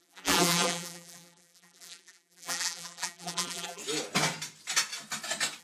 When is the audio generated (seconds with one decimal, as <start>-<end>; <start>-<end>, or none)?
0.0-3.8